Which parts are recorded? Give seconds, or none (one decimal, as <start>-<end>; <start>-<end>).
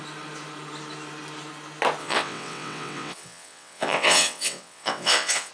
0.0-2.0